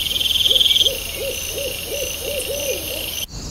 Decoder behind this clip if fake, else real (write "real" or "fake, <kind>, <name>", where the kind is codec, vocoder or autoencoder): real